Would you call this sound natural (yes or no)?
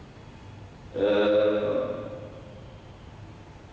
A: yes